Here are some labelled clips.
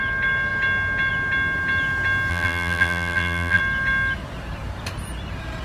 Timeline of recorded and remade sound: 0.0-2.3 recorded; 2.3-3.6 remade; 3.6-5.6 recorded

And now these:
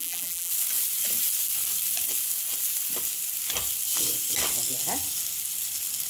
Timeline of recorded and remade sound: 0.0-0.5 remade; 0.5-6.1 recorded

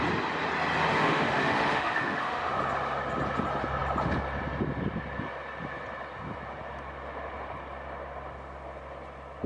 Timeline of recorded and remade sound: 0.0-0.9 recorded; 0.9-2.5 remade; 2.5-9.5 recorded